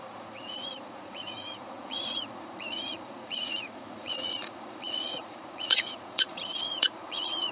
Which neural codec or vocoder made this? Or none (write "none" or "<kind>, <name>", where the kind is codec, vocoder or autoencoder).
vocoder, Vocos